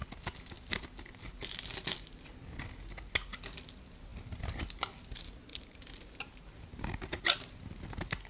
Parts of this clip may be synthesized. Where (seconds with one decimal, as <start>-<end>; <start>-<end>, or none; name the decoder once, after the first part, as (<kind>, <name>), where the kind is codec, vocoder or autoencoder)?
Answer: 5.5-7.2 (vocoder, BigVGAN v2)